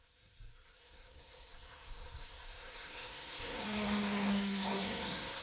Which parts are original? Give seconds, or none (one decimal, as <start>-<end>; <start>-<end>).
none